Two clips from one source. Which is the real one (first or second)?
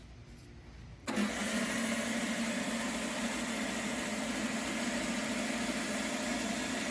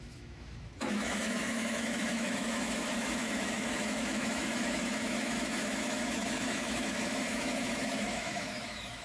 first